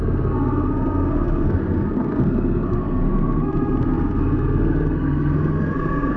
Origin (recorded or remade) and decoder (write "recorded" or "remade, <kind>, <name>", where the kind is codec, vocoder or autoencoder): remade, codec, SNAC